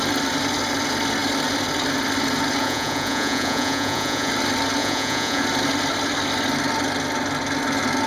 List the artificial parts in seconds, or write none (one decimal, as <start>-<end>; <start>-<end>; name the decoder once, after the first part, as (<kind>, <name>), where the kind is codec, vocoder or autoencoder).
2.6-4.3 (vocoder, Vocos); 4.8-5.4